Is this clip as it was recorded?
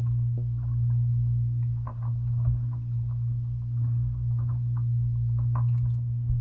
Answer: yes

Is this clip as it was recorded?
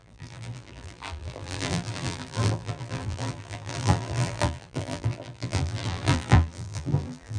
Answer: no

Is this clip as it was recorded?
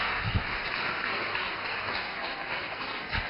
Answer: no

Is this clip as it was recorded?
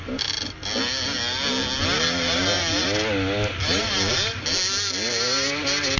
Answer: yes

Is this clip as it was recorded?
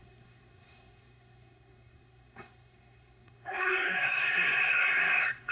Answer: no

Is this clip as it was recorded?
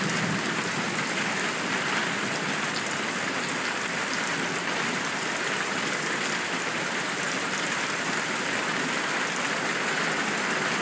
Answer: yes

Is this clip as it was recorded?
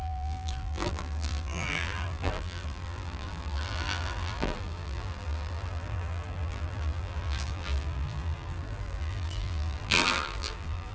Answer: no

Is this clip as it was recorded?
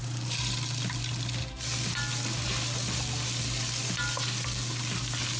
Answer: yes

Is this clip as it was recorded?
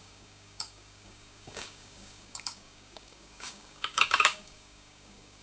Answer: no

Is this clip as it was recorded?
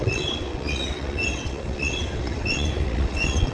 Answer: no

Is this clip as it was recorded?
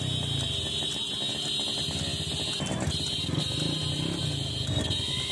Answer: yes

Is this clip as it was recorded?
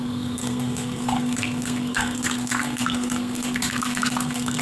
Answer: no